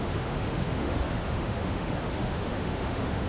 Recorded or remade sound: remade